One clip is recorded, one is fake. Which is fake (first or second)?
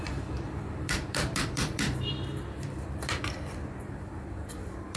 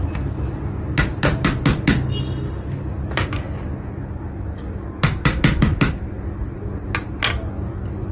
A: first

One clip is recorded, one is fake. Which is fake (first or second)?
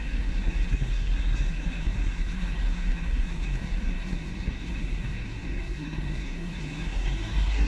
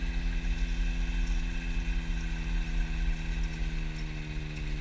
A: first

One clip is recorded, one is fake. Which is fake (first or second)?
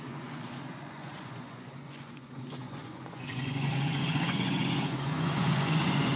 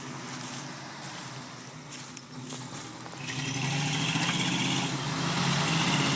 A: first